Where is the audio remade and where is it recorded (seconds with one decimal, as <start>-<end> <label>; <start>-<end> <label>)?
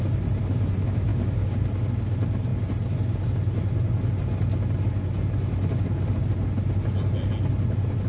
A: 0.0-1.1 recorded; 1.1-1.7 remade; 1.7-8.1 recorded